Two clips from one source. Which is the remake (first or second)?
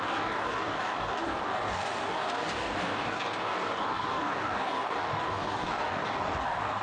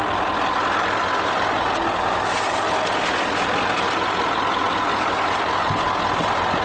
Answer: first